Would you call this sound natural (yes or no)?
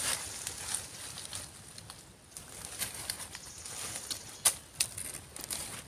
yes